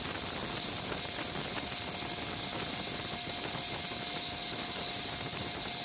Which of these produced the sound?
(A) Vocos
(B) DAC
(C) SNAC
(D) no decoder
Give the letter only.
D